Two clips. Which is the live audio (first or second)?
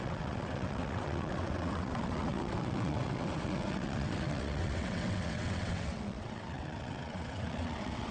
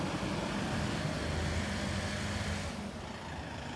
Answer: second